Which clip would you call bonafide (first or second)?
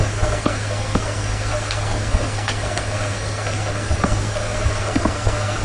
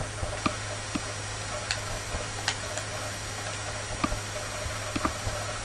second